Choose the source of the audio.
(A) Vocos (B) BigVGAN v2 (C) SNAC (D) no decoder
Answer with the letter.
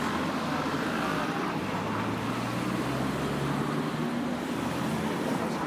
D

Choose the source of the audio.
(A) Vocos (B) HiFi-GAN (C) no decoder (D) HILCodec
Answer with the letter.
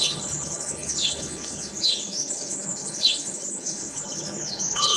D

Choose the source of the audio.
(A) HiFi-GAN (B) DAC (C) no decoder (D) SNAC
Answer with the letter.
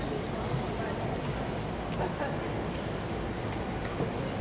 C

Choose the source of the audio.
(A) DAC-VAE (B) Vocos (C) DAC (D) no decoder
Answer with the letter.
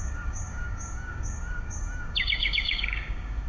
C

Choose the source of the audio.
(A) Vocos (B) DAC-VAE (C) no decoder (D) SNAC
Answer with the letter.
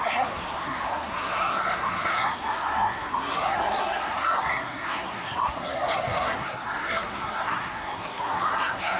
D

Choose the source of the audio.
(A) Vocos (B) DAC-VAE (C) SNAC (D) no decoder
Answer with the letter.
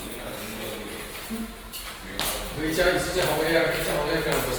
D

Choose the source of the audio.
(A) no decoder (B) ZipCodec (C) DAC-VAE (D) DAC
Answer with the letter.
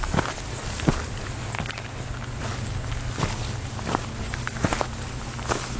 A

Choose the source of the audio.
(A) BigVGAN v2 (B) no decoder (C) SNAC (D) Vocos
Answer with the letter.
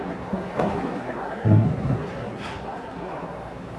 C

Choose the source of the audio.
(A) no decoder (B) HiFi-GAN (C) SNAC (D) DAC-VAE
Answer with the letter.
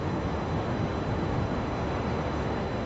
D